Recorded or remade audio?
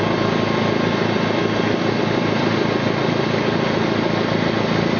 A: recorded